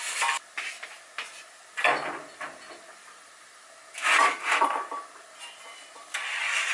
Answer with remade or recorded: recorded